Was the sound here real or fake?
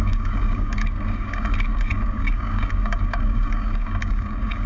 fake